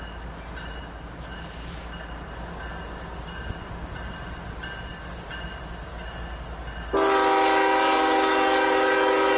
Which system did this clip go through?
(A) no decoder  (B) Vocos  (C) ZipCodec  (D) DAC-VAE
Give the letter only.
A